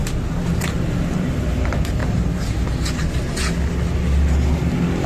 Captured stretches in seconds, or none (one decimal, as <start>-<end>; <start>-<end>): 0.0-5.1